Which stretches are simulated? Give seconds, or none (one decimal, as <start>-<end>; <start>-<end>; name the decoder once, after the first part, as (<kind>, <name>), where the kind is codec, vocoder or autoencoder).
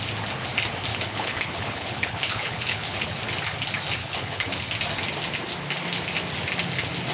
0.9-3.2 (codec, HILCodec); 4.0-4.7